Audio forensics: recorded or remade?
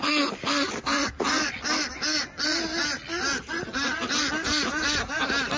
recorded